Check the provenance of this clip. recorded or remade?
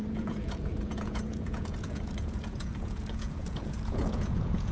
remade